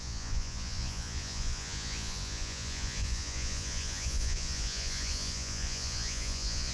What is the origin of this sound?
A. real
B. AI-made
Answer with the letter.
B